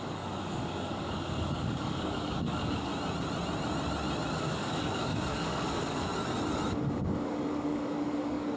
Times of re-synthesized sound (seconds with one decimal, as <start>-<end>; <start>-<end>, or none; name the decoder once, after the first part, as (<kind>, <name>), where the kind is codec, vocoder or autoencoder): 0.0-2.9 (codec, DAC); 4.3-6.1; 6.7-8.6